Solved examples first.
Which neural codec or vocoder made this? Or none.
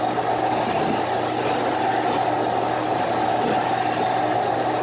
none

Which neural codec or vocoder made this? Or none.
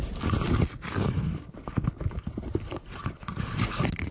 none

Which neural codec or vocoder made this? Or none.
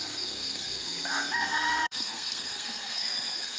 codec, SNAC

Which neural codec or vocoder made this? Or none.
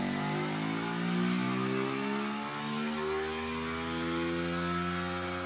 none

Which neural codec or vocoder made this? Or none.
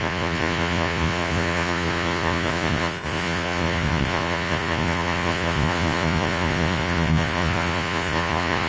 vocoder, Vocos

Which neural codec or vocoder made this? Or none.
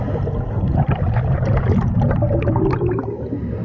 none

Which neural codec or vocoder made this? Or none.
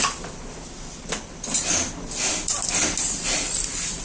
none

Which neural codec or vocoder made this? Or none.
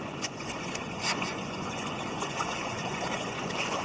vocoder, Vocos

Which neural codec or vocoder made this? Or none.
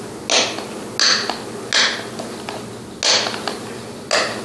none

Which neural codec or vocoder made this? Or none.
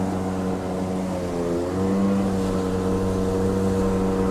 none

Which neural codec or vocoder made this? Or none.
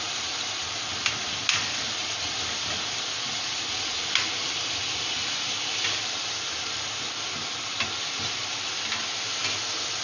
none